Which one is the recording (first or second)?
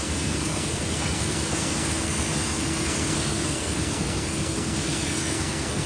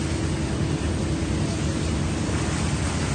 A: second